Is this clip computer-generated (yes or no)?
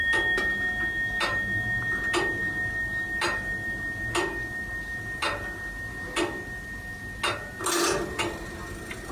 no